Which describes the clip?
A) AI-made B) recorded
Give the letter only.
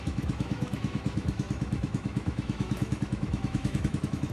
A